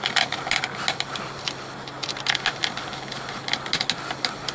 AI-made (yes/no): no